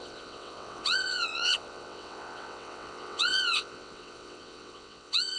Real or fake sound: fake